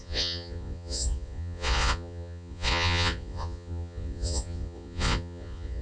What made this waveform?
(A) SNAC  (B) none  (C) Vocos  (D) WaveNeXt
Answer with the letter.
C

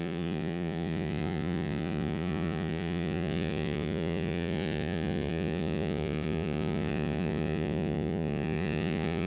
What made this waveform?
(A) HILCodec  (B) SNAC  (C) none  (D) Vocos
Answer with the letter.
D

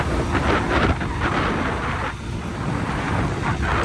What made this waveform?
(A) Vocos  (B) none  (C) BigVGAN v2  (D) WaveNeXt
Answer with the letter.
B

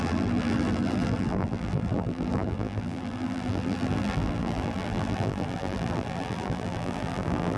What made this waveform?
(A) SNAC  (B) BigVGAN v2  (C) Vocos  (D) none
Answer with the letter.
B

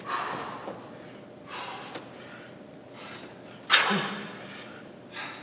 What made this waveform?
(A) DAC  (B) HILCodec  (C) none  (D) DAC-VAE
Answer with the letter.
C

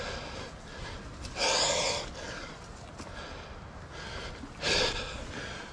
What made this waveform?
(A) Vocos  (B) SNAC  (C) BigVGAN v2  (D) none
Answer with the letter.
D